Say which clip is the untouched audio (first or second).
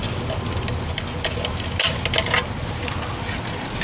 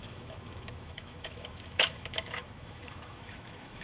first